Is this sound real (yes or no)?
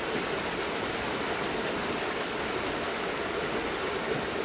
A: yes